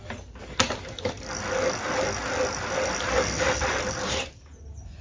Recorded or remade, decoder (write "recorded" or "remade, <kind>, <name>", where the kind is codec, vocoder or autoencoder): recorded